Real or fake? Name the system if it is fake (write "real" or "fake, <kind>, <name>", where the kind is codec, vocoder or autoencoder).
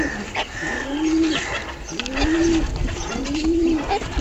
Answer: real